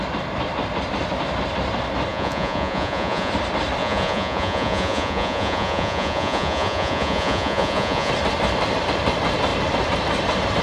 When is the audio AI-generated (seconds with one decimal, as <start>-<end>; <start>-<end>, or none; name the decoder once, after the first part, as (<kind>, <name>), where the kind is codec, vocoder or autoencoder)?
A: 2.1-3.3 (vocoder, Vocos); 3.8-8.1